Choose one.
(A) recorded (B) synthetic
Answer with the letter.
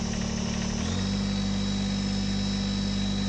A